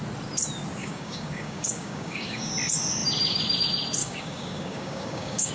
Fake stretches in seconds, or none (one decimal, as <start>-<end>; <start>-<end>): 0.8-2.5; 4.0-5.5